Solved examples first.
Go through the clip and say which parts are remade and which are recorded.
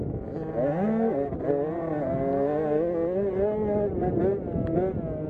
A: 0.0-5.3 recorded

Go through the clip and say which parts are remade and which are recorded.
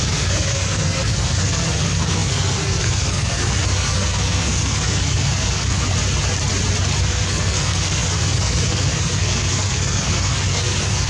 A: 0.0-5.9 remade; 5.9-7.0 recorded; 7.0-11.1 remade